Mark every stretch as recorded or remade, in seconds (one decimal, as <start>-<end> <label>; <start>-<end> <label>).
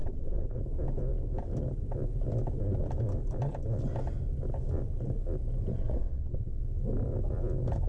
0.0-0.6 remade; 0.6-5.7 recorded; 5.7-6.6 remade; 6.6-7.9 recorded